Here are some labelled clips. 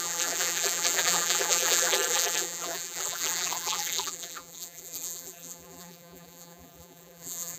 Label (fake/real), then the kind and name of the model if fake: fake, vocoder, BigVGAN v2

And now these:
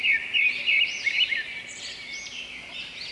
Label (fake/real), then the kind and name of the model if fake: real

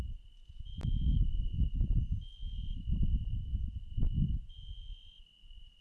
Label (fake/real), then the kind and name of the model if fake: real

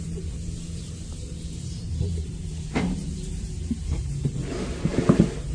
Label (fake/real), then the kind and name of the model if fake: fake, vocoder, BigVGAN v2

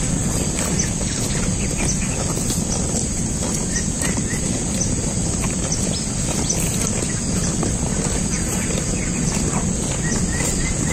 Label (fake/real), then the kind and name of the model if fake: real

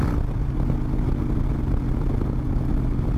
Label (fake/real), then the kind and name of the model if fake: real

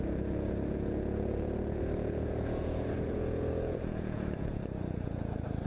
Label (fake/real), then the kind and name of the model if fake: fake, vocoder, Vocos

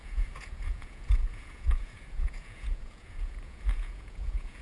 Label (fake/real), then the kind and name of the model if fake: fake, vocoder, Vocos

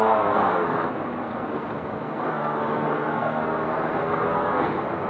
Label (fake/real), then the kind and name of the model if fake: fake, codec, SNAC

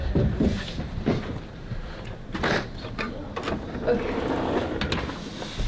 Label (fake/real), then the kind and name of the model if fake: real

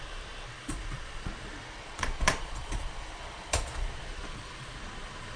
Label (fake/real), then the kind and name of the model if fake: fake, vocoder, Vocos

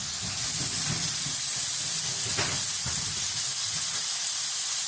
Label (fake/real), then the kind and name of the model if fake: real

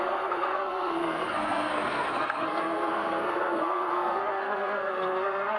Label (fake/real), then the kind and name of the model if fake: fake, codec, SNAC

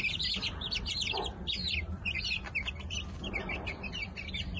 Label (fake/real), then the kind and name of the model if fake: real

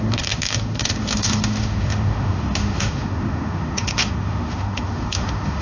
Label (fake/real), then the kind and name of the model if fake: fake, autoencoder, DAC-VAE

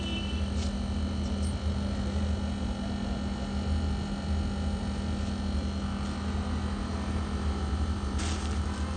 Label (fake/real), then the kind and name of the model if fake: real